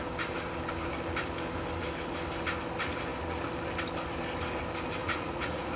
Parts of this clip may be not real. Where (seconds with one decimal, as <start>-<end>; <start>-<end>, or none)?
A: 5.0-5.8

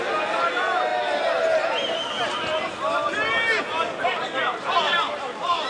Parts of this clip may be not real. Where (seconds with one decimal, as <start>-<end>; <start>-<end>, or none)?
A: none